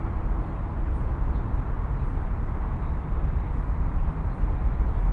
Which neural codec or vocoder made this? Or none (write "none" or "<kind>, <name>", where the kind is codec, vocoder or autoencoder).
none